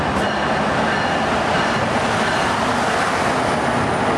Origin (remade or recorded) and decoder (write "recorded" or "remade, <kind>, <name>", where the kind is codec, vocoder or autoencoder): recorded